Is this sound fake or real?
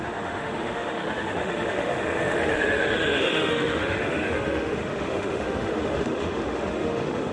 fake